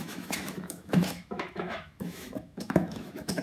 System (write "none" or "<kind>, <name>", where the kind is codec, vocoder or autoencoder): autoencoder, DAC-VAE